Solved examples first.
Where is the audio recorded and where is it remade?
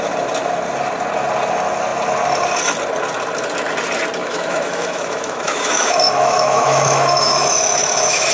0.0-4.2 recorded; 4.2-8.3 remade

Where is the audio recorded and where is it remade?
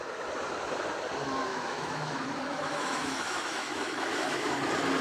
0.0-1.5 recorded; 1.5-4.5 remade; 4.5-5.0 recorded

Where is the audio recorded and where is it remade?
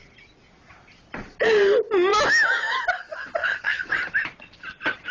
0.0-2.1 recorded; 2.1-2.8 remade; 2.8-3.4 recorded; 3.4-3.9 remade; 3.9-5.1 recorded